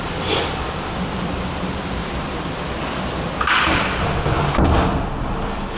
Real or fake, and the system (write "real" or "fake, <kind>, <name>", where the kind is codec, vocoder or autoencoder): fake, vocoder, BigVGAN v2